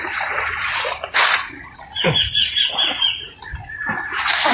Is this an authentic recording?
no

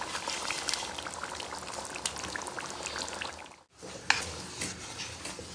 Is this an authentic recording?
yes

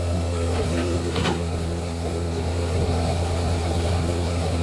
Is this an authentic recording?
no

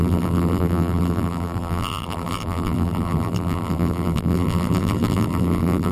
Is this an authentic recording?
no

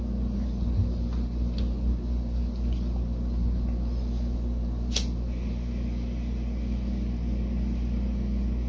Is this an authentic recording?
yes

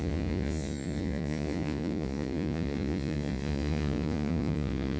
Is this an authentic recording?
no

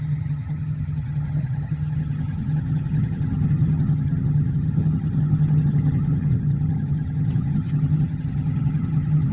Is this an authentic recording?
no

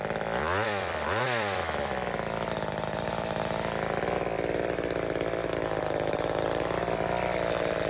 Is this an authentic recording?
no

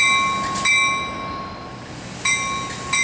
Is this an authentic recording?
yes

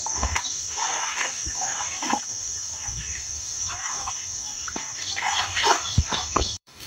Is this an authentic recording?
no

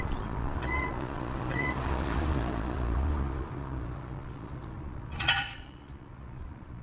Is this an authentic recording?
no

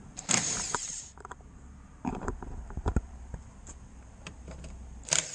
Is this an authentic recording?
no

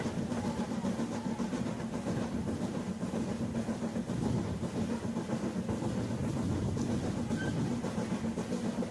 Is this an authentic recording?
yes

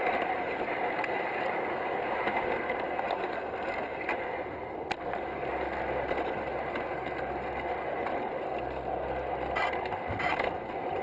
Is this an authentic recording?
yes